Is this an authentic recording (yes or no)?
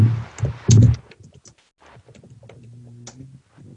yes